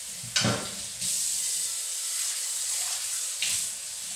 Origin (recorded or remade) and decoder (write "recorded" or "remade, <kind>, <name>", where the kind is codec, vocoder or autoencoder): recorded